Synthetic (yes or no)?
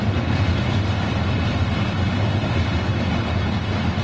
no